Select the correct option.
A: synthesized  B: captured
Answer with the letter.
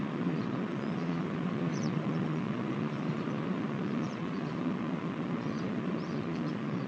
A